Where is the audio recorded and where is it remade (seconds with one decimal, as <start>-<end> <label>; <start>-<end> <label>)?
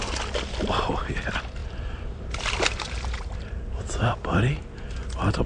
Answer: 0.0-1.6 recorded; 1.6-4.9 remade; 4.9-5.5 recorded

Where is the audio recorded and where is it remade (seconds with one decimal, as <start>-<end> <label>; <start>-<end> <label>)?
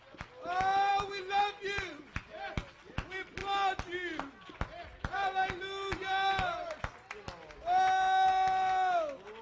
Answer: 0.0-9.4 recorded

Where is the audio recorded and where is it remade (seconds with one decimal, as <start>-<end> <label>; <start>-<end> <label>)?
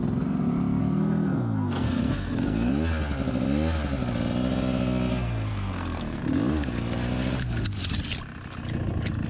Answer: 0.0-0.8 recorded; 0.8-2.7 remade; 2.7-5.1 recorded; 5.1-6.2 remade; 6.2-9.3 recorded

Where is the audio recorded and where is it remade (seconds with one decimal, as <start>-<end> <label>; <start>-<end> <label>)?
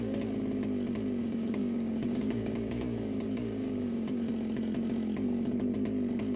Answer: 0.0-1.2 recorded; 1.2-4.3 remade; 4.3-6.4 recorded